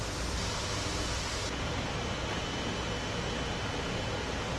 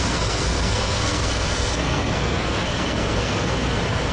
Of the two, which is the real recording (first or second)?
first